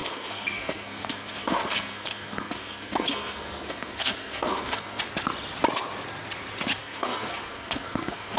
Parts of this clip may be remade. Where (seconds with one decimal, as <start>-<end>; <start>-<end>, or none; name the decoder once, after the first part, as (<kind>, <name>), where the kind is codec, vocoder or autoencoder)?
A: 0.0-5.0 (codec, SNAC); 6.8-8.4